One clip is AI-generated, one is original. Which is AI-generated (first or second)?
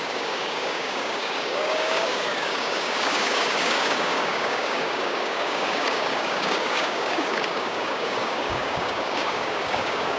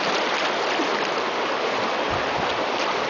first